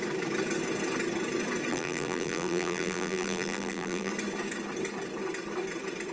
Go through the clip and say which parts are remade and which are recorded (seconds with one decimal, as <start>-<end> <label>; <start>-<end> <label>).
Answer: 0.0-1.7 recorded; 1.7-4.1 remade; 4.1-6.1 recorded